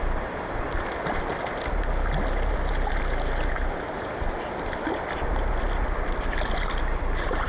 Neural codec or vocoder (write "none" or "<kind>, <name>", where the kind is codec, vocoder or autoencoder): none